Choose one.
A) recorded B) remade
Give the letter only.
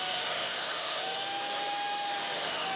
B